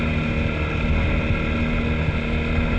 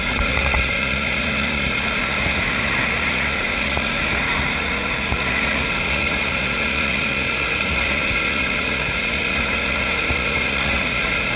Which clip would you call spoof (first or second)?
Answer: second